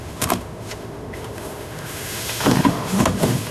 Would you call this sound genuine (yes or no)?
no